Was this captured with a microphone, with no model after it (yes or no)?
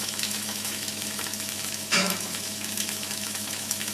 no